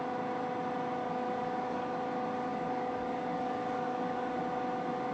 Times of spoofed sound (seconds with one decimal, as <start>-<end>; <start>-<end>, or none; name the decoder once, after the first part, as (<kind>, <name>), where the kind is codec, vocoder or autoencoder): 1.0-2.0 (codec, DAC); 2.5-4.4